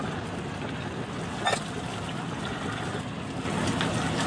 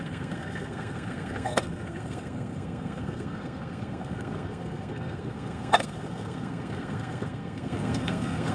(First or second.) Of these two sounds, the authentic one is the first